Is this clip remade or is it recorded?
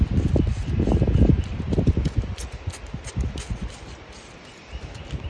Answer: recorded